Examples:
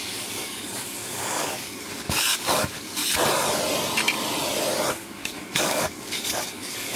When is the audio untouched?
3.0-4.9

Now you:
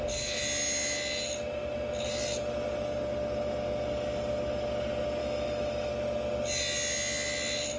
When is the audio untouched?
0.0-5.2; 5.9-7.8

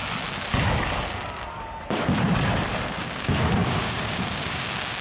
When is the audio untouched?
0.0-3.0